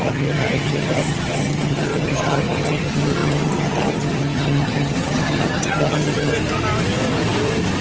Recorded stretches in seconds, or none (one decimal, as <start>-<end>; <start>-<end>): 6.3-7.8